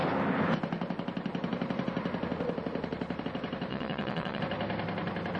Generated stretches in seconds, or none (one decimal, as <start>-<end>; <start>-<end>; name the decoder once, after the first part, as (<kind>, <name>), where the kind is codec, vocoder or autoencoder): 3.7-4.4 (vocoder, Vocos)